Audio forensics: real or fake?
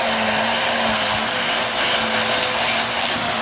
real